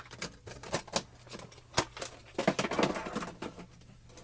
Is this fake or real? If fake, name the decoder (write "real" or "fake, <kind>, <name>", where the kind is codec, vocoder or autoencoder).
real